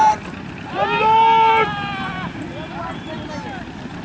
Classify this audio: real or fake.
real